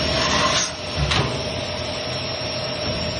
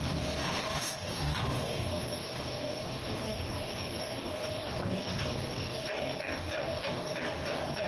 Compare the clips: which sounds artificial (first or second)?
second